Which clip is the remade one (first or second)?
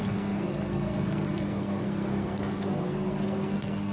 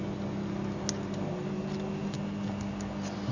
first